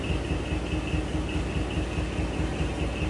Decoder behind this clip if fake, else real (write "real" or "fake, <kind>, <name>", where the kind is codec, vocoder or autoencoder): real